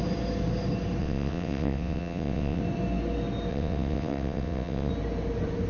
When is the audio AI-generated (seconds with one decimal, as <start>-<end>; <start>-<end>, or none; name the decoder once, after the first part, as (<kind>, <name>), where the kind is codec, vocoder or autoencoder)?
1.0-2.6 (vocoder, WaveNeXt); 3.5-4.9